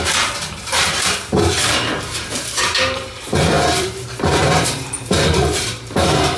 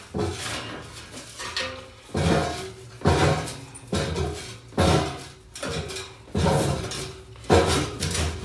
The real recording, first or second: second